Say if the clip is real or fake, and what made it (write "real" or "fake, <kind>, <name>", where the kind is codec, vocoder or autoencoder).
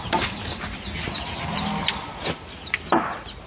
real